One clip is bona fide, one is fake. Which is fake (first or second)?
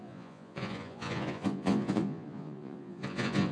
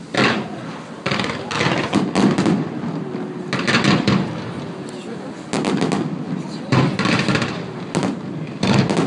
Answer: first